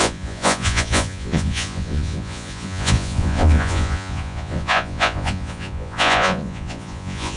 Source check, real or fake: fake